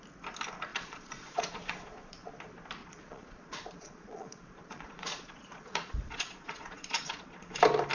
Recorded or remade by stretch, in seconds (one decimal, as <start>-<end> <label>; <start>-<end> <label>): 0.0-0.7 recorded; 0.7-2.3 remade; 2.3-2.8 recorded; 2.8-7.5 remade; 7.5-7.9 recorded